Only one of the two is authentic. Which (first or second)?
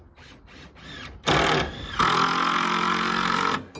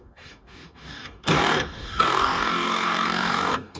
first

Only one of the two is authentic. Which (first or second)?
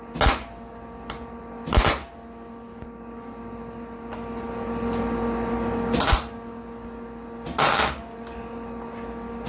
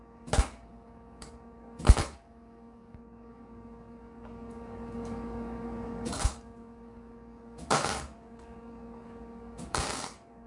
first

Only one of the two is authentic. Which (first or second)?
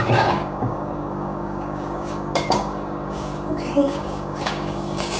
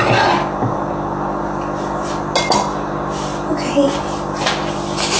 second